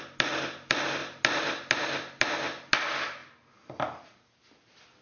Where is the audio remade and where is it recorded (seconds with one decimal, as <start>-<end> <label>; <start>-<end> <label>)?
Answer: 0.0-5.0 recorded